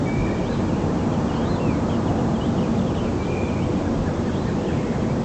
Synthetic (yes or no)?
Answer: no